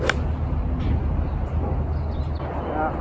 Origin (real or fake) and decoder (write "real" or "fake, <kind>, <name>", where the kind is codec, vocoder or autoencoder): real